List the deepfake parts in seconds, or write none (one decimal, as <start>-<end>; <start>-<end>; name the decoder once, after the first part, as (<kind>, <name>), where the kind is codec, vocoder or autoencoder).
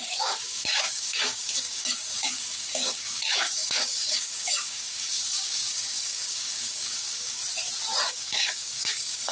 0.0-7.4 (codec, DAC); 8.1-9.3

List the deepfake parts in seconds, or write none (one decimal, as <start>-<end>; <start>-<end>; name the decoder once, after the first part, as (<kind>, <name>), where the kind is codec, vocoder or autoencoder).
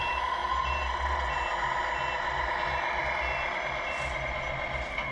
none